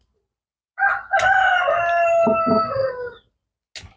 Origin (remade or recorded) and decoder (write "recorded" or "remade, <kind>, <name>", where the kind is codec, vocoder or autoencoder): recorded